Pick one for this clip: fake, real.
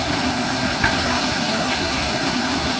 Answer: fake